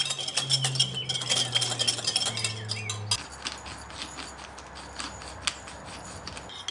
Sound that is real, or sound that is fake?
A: real